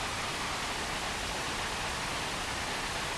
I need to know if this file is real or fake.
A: real